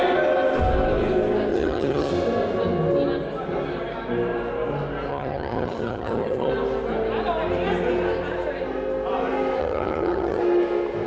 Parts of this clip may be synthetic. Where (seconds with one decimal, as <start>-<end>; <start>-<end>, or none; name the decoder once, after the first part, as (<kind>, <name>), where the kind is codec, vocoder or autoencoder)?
1.5-2.1 (vocoder, HiFi-GAN); 5.1-6.5; 9.6-10.4